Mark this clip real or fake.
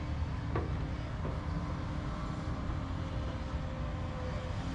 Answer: real